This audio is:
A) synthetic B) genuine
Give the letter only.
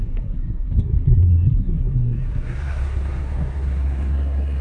A